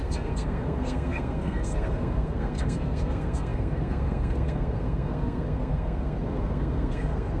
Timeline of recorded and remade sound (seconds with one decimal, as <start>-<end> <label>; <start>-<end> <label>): 0.0-7.4 remade